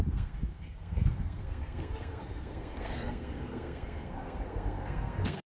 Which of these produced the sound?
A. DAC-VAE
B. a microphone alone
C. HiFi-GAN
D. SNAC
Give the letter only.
D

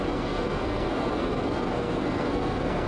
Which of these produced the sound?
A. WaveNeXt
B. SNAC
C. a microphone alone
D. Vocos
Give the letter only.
B